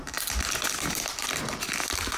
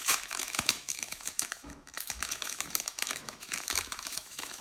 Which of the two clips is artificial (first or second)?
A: second